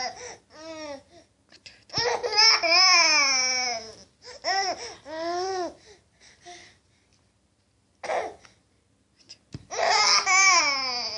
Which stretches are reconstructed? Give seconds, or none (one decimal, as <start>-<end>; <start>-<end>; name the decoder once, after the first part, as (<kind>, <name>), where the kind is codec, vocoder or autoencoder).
none